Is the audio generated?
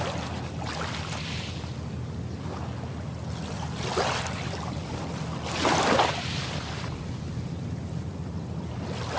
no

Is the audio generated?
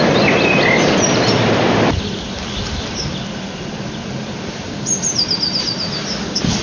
no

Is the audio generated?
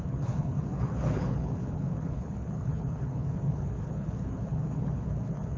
yes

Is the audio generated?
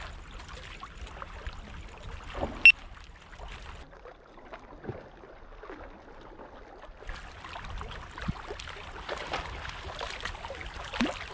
no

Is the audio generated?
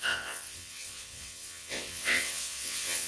yes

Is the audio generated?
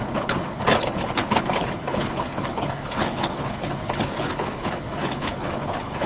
yes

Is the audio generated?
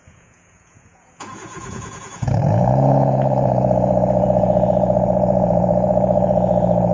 yes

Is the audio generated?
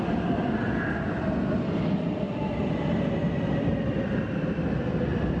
no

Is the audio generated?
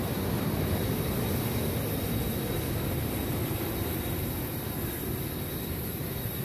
no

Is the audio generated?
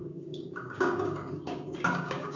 yes